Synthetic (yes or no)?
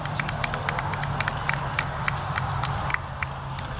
no